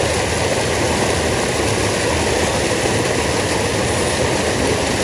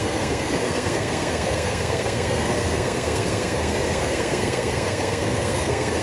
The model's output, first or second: second